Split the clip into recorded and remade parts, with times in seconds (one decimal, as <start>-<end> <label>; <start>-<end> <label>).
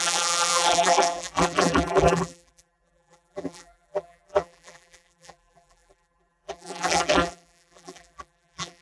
0.0-8.8 remade